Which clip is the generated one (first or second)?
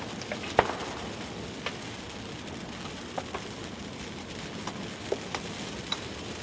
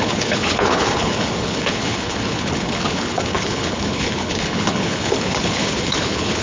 second